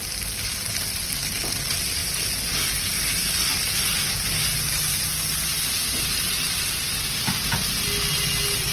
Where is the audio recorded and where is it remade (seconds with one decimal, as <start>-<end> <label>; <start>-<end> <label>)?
0.0-8.7 recorded